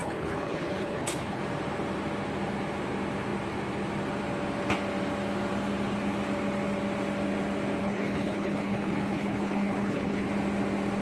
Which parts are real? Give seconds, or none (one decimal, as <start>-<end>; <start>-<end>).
1.4-7.8; 10.3-11.0